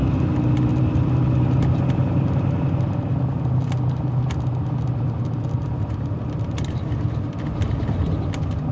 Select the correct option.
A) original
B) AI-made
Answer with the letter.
A